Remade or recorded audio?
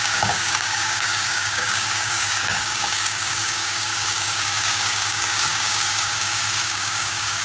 remade